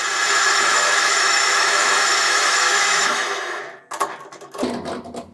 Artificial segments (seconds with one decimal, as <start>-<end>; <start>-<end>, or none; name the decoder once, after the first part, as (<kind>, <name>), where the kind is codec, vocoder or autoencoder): 0.4-3.6 (autoencoder, DAC-VAE)